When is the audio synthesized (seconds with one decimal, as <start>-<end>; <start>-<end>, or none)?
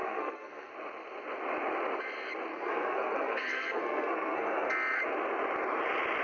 0.0-0.7; 2.5-4.7